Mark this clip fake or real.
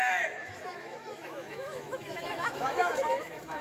fake